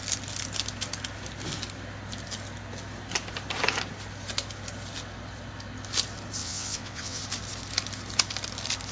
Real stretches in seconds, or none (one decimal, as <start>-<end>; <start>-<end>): 0.0-6.4; 7.2-8.9